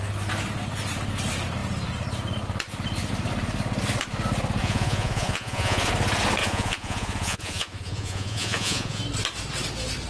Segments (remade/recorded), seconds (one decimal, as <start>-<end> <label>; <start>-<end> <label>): 0.0-4.6 recorded; 4.6-5.9 remade; 5.9-6.4 recorded; 6.4-9.0 remade; 9.0-10.1 recorded